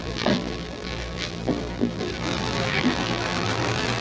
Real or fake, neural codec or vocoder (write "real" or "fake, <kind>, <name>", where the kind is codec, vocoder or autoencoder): fake, vocoder, BigVGAN v2